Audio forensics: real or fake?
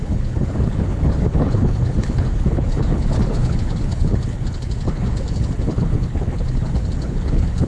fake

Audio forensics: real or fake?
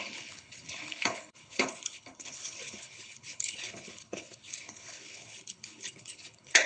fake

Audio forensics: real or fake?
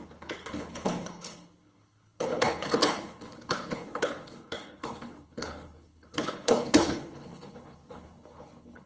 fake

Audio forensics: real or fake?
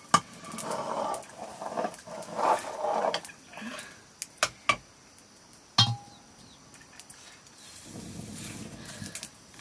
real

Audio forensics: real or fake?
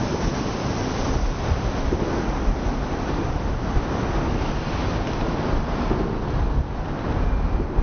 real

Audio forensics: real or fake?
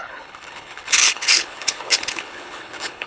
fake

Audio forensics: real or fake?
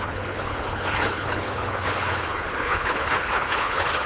fake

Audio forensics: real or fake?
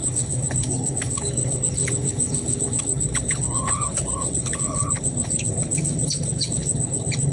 fake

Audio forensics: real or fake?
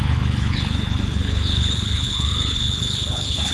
fake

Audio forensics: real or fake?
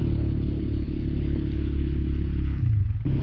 fake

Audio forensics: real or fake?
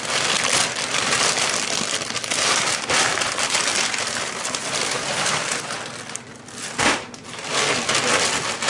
real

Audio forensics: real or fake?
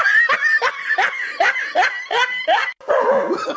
real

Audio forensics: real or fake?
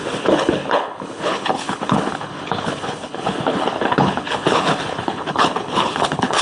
fake